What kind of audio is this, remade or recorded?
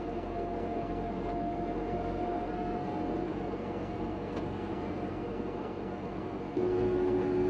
remade